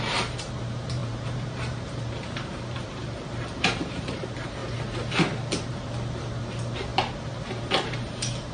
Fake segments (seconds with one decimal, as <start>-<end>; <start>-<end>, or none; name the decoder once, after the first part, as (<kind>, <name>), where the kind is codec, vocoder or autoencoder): 0.0-4.6 (vocoder, BigVGAN v2); 5.7-6.9; 7.7-8.5